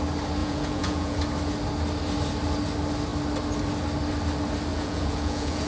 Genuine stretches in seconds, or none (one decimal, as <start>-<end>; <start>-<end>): 0.0-0.4; 1.2-4.7